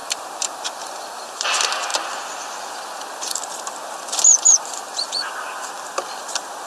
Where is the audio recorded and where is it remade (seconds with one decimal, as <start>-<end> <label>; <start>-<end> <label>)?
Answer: 0.0-6.7 remade

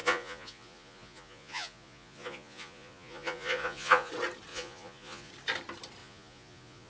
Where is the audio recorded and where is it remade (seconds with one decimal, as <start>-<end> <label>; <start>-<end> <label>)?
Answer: 0.0-4.1 remade; 4.1-4.5 recorded; 4.5-5.3 remade; 5.3-6.0 recorded; 6.0-6.9 remade

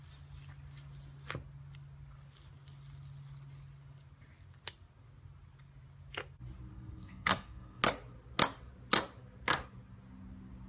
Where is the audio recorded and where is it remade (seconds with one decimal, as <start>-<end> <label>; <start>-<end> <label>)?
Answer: 0.0-6.7 recorded; 6.7-7.8 remade; 7.8-10.7 recorded

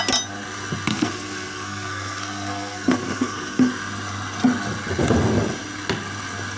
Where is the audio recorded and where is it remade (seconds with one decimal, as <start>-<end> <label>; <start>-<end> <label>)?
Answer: 0.0-0.9 recorded; 0.9-3.7 remade; 3.7-6.6 recorded